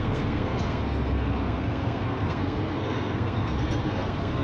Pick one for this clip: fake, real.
fake